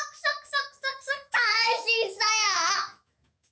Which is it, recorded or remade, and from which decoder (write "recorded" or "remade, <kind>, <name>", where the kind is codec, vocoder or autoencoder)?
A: remade, autoencoder, DAC-VAE